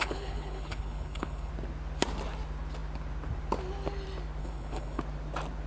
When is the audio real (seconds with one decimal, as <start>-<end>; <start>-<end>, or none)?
1.5-4.4; 5.0-5.7